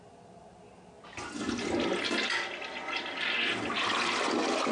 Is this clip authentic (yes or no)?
yes